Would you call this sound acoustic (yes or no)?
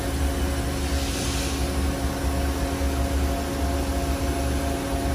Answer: yes